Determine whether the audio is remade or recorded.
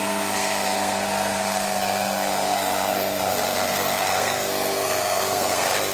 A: remade